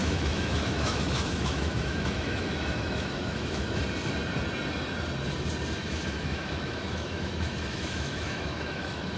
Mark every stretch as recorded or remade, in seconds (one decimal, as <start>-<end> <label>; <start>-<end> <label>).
0.0-3.8 remade; 3.8-5.8 recorded; 5.8-9.2 remade